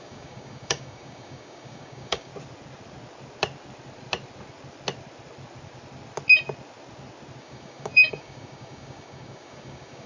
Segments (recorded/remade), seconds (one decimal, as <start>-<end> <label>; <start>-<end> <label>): 0.0-2.3 remade; 2.3-7.4 recorded; 7.4-10.1 remade